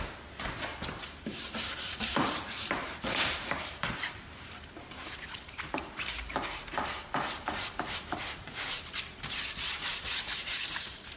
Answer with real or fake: fake